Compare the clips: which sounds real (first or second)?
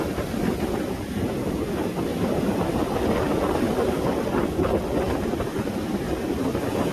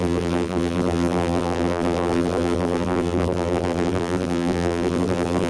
first